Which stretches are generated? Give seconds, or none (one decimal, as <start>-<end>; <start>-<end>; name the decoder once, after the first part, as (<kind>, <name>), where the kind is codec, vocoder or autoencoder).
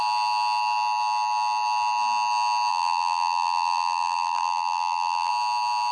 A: 2.7-5.3 (vocoder, BigVGAN v2)